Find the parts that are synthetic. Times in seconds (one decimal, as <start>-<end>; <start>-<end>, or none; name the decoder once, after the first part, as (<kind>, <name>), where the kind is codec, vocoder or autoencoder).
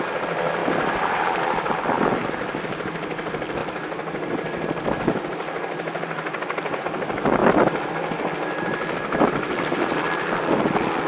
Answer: 0.6-1.7 (vocoder, BigVGAN v2)